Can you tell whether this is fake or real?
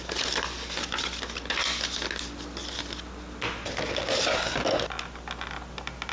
real